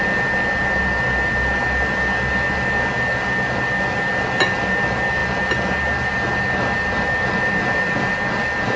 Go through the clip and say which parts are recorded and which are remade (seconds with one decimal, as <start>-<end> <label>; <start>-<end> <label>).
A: 0.0-8.8 recorded